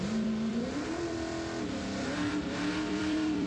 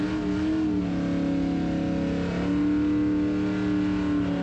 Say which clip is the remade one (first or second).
first